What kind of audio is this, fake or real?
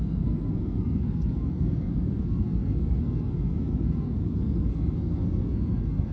fake